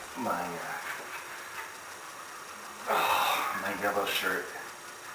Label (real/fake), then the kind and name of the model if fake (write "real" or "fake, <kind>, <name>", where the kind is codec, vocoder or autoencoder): real